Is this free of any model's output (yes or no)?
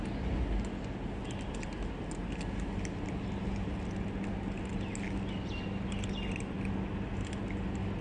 yes